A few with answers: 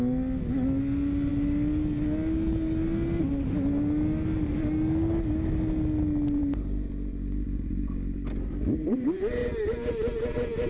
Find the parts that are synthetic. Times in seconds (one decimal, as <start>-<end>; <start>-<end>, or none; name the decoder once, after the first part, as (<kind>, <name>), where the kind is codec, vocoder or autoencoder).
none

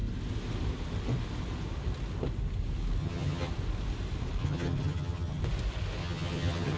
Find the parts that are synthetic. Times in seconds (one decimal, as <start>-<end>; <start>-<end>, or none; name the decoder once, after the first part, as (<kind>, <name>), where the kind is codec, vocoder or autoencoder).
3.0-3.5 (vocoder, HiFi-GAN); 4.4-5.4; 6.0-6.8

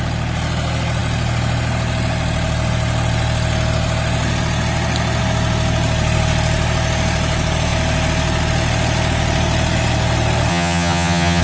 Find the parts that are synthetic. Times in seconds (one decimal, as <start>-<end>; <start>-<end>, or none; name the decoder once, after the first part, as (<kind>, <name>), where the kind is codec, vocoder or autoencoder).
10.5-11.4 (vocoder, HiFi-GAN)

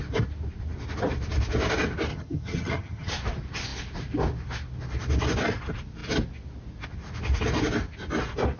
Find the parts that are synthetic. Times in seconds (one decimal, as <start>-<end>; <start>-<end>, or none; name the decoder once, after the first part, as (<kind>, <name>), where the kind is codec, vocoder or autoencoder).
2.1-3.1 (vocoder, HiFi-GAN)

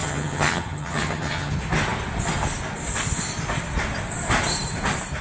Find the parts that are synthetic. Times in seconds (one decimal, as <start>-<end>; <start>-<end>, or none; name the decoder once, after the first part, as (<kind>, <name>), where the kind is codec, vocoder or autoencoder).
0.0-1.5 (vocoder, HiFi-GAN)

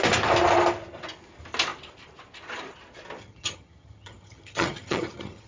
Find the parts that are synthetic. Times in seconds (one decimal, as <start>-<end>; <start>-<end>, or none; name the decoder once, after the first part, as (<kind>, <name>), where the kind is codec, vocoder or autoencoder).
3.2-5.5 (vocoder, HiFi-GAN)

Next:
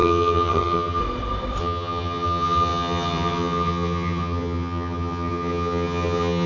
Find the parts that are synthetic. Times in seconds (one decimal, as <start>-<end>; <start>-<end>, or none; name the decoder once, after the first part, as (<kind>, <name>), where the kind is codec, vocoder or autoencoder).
0.0-1.0 (vocoder, HiFi-GAN); 1.6-6.5